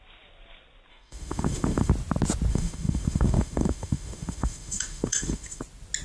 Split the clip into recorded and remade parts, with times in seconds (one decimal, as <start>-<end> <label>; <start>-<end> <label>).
0.0-0.9 recorded; 0.9-1.9 remade; 1.9-2.5 recorded; 2.5-5.6 remade; 5.6-6.0 recorded